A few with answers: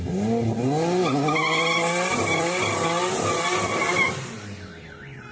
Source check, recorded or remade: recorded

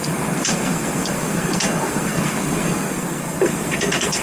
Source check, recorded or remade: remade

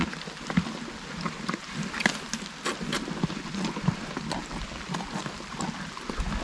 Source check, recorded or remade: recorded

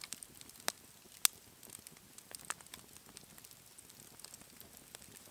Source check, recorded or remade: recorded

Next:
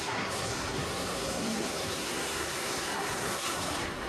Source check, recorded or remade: remade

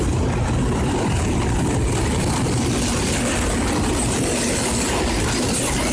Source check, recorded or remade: recorded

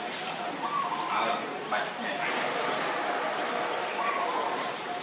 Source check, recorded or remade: recorded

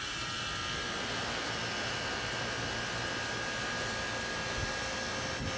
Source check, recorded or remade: recorded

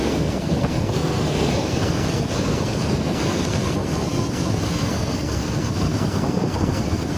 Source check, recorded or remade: remade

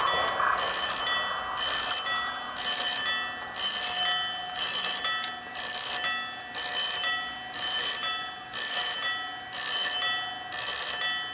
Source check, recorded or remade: recorded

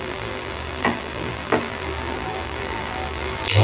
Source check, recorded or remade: remade